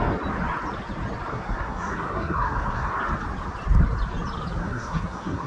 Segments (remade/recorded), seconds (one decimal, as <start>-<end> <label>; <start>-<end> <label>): 0.0-1.3 recorded; 1.3-2.9 remade; 2.9-4.6 recorded; 4.6-5.5 remade